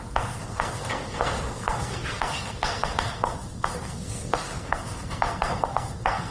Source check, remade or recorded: remade